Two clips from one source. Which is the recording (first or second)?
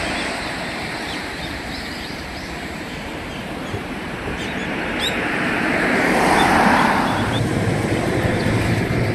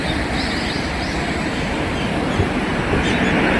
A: second